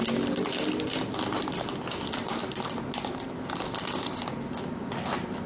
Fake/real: real